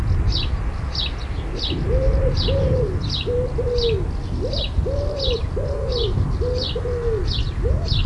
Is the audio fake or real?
real